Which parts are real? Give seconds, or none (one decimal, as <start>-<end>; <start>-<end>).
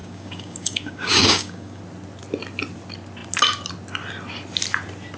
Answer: 1.8-5.2